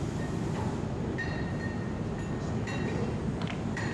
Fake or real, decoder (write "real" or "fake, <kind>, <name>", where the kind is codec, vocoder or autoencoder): real